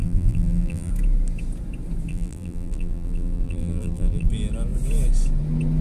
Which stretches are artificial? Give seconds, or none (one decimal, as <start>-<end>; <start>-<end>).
0.0-0.9; 2.1-4.3